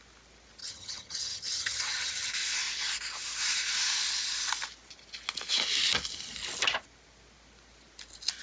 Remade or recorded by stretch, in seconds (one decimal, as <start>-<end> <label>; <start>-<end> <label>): 0.0-0.6 recorded; 0.6-2.3 remade; 2.3-8.4 recorded

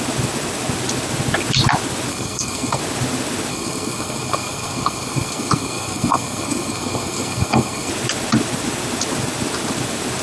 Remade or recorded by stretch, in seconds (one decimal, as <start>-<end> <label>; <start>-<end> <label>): 0.0-2.1 recorded; 2.1-2.8 remade; 2.8-3.5 recorded; 3.5-7.9 remade; 7.9-10.2 recorded

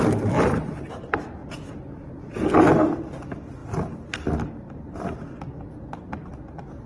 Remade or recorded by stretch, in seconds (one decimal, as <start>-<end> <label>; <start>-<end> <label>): 0.0-1.4 recorded; 1.4-2.5 remade; 2.5-6.9 recorded